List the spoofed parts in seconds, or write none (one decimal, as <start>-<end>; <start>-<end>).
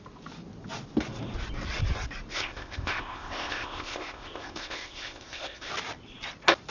2.3-5.7